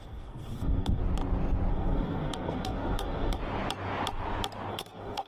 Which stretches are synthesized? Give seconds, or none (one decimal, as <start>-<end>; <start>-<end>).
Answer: 0.0-1.0; 1.7-3.4; 4.7-5.3